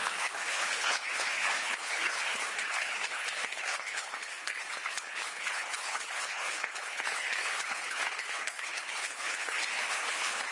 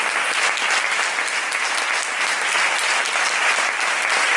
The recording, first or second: second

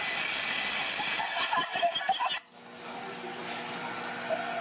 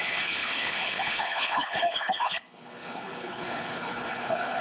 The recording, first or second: first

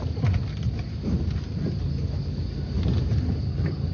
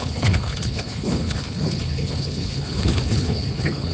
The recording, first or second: first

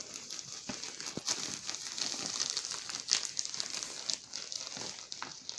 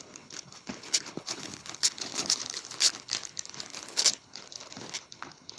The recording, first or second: first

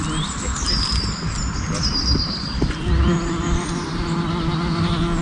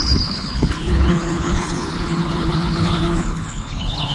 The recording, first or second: first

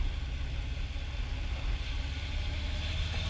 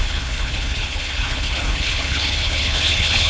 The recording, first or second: first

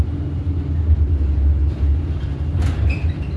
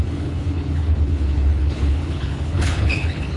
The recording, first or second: first